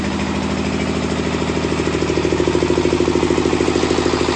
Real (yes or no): yes